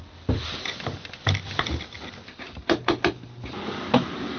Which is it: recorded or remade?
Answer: recorded